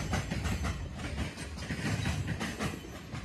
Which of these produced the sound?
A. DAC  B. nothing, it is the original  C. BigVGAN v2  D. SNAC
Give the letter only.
B